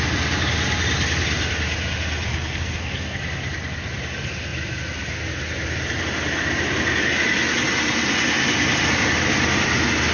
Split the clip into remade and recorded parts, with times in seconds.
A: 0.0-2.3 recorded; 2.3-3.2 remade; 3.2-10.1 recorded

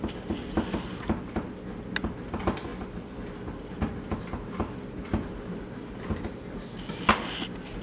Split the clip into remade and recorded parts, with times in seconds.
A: 0.0-7.8 recorded

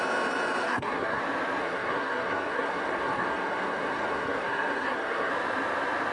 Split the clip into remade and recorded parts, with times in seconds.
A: 0.0-0.6 recorded; 0.6-1.2 remade; 1.2-1.6 recorded; 1.6-5.3 remade; 5.3-6.1 recorded

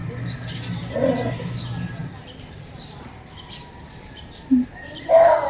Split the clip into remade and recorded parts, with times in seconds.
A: 0.0-0.9 remade; 0.9-2.0 recorded; 2.0-5.5 remade

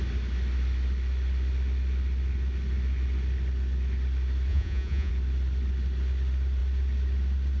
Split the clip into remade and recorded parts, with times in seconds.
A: 0.0-4.5 recorded; 4.5-5.1 remade; 5.1-7.6 recorded